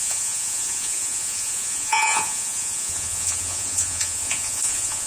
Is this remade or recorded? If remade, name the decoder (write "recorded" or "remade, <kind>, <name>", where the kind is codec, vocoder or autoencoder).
remade, vocoder, Vocos